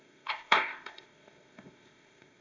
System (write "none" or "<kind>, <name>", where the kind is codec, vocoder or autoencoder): codec, ZipCodec